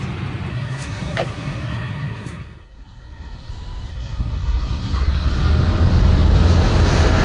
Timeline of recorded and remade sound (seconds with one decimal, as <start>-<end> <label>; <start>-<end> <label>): 0.0-0.5 recorded; 0.5-3.5 remade; 3.5-3.9 recorded; 3.9-5.3 remade; 5.3-7.2 recorded